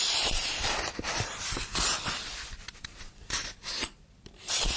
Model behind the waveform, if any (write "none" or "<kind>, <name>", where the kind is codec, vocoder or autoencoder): vocoder, BigVGAN v2